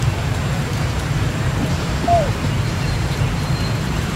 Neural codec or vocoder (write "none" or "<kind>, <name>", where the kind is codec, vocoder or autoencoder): vocoder, BigVGAN v2